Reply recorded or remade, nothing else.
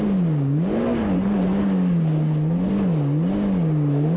recorded